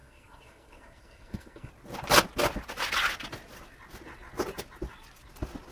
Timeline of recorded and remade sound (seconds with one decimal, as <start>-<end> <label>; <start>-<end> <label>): 0.0-1.7 remade; 1.7-5.7 recorded